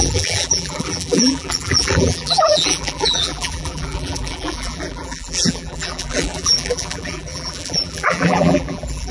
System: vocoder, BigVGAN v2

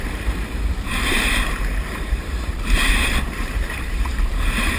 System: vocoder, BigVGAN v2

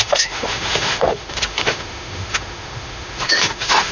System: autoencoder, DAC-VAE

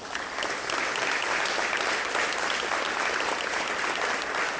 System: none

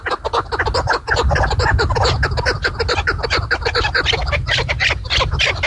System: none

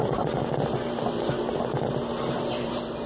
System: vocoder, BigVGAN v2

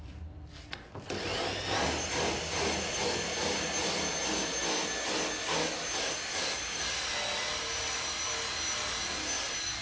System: none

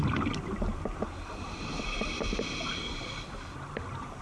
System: none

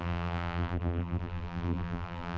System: vocoder, BigVGAN v2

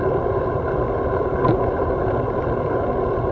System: none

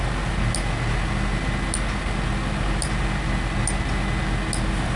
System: none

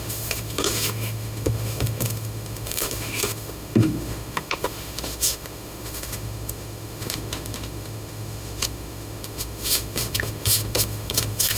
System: autoencoder, DAC-VAE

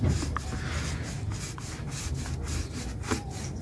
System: none